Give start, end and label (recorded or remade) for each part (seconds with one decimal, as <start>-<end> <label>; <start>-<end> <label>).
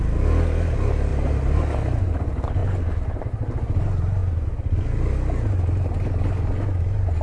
0.0-7.2 recorded